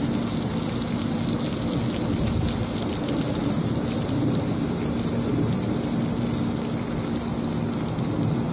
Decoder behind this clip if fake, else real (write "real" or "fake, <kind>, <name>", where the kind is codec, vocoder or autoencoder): real